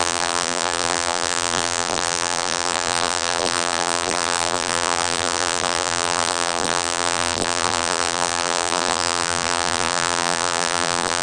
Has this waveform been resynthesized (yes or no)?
yes